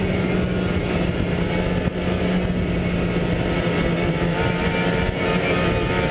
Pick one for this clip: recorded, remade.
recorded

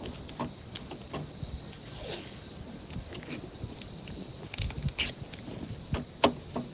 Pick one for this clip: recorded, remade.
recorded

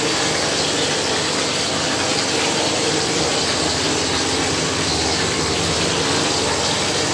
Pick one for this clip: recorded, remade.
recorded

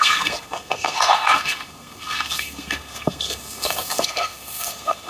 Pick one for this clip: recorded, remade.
remade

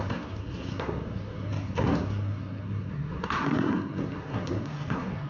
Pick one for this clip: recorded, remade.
remade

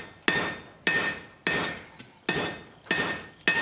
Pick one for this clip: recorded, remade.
recorded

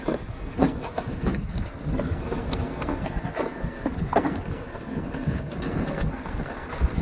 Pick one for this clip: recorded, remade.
remade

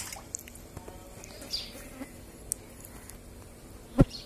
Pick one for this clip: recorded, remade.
recorded